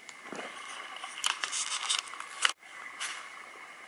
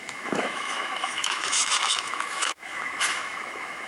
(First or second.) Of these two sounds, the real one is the first